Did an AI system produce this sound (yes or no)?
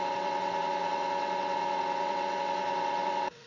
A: yes